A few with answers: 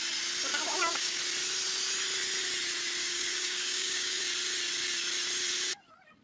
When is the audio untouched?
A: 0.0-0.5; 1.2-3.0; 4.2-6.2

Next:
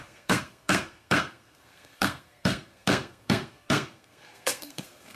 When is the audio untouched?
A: none

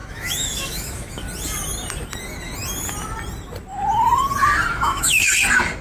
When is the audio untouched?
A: 1.2-4.7; 5.3-5.8

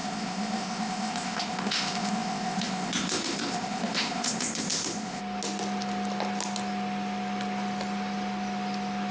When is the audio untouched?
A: 5.2-9.1

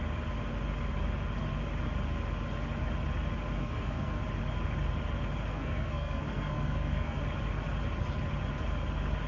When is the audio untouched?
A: 0.0-3.6; 4.2-5.5; 7.2-9.3

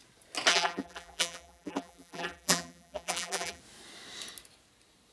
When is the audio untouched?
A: 0.0-0.5; 3.6-5.1

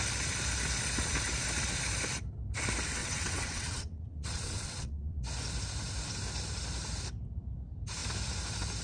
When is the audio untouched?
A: 0.0-3.0; 5.2-8.8